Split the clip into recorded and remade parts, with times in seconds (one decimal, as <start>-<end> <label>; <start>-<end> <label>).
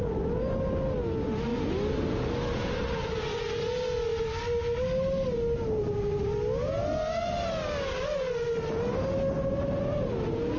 0.0-10.6 recorded